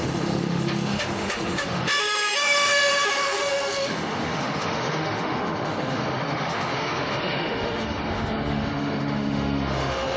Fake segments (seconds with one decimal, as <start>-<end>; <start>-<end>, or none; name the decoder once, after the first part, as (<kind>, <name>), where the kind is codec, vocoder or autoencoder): 0.0-10.2 (autoencoder, DAC-VAE)